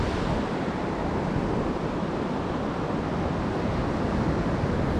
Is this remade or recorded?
recorded